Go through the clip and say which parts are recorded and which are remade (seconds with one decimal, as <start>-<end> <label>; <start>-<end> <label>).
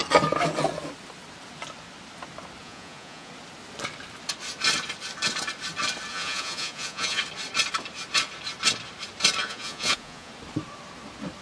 0.0-2.6 recorded; 2.6-3.3 remade; 3.3-6.1 recorded; 6.1-7.2 remade; 7.2-9.4 recorded; 9.4-10.3 remade; 10.3-11.4 recorded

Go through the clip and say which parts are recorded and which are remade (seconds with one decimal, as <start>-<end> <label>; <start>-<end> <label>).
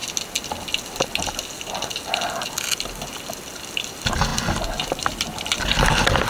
0.0-6.3 recorded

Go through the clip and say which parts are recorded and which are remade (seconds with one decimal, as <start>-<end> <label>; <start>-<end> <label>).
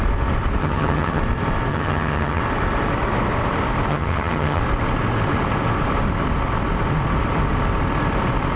0.0-0.6 recorded; 0.6-1.2 remade; 1.2-1.7 recorded; 1.7-2.4 remade; 2.4-3.9 recorded; 3.9-4.6 remade; 4.6-8.6 recorded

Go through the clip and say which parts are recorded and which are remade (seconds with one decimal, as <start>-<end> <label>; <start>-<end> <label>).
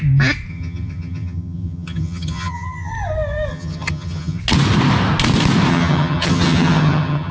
0.0-0.5 recorded; 0.5-2.9 remade; 2.9-3.5 recorded; 3.5-4.4 remade; 4.4-5.7 recorded; 5.7-7.3 remade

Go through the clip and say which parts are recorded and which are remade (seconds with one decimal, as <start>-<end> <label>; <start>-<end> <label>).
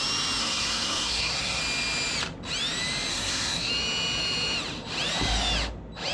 0.0-0.4 recorded; 0.4-1.6 remade; 1.6-3.1 recorded; 3.1-3.7 remade; 3.7-6.1 recorded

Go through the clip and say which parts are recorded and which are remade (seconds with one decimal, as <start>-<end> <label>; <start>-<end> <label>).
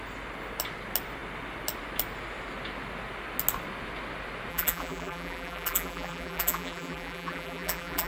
0.0-4.5 recorded; 4.5-8.1 remade